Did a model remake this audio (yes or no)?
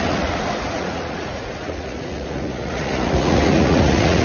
yes